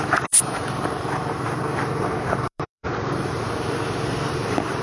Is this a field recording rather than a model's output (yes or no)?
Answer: no